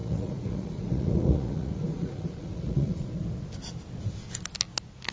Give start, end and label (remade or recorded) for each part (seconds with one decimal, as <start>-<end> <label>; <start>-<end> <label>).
0.0-3.1 remade; 3.1-5.1 recorded